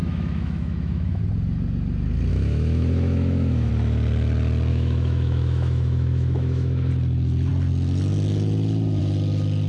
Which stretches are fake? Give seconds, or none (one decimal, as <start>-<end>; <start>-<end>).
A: 0.0-1.2; 2.3-3.7; 4.7-6.9

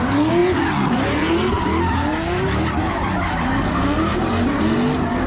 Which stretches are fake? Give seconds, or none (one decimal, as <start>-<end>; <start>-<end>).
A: 4.1-4.6